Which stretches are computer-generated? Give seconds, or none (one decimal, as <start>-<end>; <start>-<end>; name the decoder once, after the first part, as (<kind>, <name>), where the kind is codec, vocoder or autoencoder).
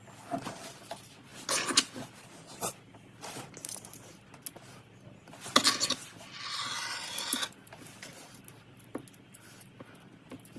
none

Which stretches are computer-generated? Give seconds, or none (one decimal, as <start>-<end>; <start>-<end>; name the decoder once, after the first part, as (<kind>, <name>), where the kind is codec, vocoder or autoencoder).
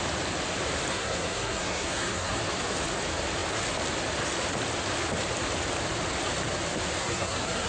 0.9-2.4 (codec, SNAC); 7.0-7.7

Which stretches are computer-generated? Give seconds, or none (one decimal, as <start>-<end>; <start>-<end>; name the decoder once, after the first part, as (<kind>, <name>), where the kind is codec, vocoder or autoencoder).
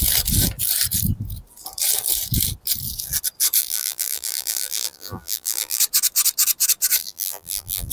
3.6-5.8 (vocoder, BigVGAN v2); 7.0-7.9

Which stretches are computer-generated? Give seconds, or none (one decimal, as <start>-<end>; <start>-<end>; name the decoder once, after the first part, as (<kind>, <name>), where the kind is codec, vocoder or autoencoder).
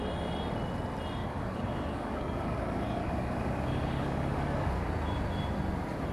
1.2-4.9 (codec, DAC)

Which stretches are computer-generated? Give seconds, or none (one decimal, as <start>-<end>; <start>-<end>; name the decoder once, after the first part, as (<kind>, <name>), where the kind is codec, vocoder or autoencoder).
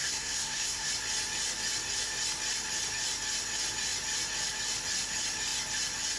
0.0-0.9 (codec, SNAC)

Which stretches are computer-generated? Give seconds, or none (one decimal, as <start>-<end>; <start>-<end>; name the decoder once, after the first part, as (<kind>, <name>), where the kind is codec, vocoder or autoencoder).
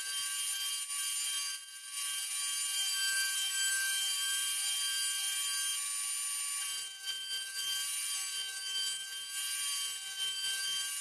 none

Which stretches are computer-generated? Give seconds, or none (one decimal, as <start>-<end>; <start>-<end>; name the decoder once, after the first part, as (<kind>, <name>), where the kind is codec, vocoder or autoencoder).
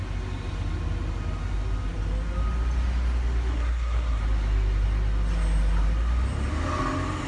3.5-4.2 (codec, SNAC)